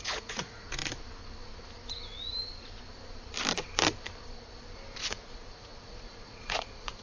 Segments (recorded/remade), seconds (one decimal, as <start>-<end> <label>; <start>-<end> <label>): 0.0-0.8 remade; 0.8-5.0 recorded; 5.0-7.0 remade